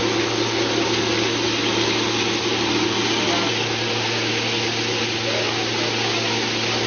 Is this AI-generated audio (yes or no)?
no